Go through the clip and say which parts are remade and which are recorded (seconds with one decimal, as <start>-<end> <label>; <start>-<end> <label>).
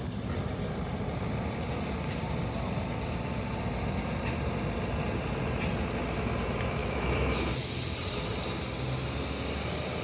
0.0-6.8 recorded; 6.8-7.5 remade; 7.5-10.0 recorded